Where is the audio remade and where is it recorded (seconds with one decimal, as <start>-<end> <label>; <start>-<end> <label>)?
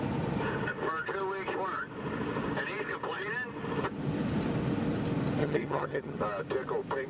0.0-5.4 recorded; 5.4-6.2 remade; 6.2-7.1 recorded